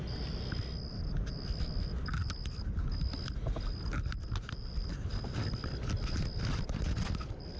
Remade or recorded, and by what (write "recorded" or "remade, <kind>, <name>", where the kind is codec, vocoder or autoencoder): recorded